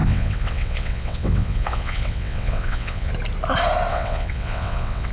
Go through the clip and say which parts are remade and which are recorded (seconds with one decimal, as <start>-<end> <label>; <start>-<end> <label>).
0.0-3.1 remade; 3.1-3.9 recorded; 3.9-5.1 remade